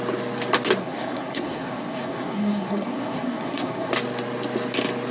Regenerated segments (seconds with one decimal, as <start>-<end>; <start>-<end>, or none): 0.8-3.9